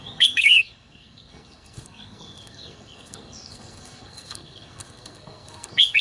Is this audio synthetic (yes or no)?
yes